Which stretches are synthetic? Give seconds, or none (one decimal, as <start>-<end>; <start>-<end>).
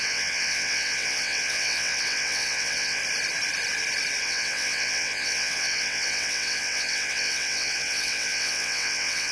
0.0-3.0; 4.2-9.3